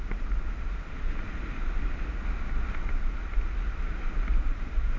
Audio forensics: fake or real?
real